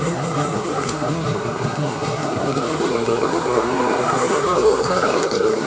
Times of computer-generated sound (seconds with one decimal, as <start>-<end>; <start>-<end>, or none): 0.0-5.7